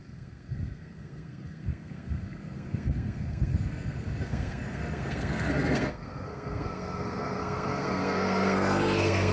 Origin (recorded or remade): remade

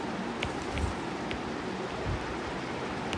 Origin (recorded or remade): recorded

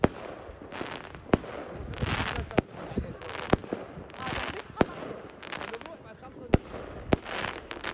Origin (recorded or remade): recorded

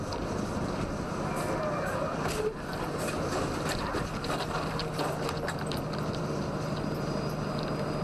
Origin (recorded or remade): recorded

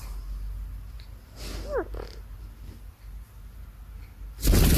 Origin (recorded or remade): recorded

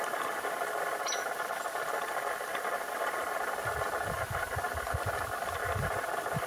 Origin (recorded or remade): recorded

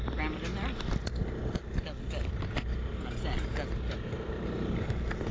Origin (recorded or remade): recorded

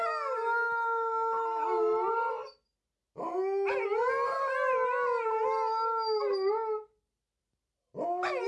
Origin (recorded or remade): recorded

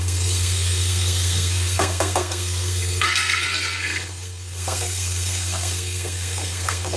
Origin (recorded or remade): remade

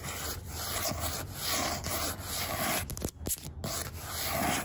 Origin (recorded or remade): recorded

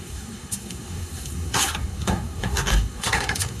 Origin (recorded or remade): remade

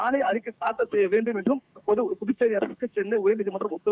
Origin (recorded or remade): remade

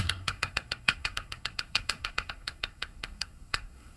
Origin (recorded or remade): remade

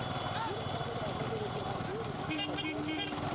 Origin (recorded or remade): recorded